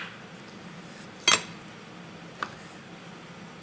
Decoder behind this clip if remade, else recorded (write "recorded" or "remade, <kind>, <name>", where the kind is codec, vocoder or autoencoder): recorded